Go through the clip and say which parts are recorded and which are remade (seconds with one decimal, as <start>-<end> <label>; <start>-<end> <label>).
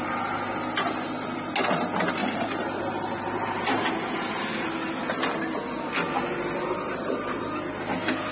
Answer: 0.0-2.2 recorded; 2.2-2.8 remade; 2.8-8.3 recorded